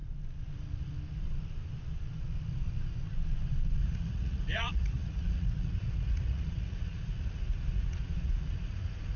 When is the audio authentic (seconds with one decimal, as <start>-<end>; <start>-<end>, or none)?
0.0-3.8